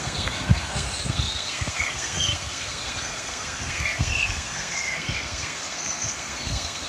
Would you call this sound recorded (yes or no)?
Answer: no